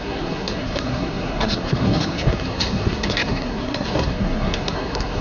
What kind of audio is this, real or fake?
fake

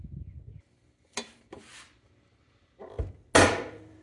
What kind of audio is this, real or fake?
real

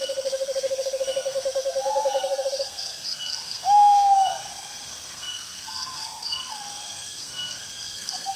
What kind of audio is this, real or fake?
fake